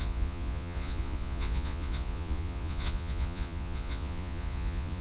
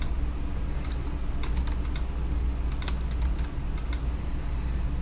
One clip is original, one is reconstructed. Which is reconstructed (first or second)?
first